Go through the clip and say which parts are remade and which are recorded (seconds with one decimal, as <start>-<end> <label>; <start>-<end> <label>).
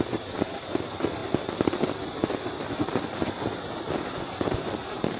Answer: 0.0-5.2 recorded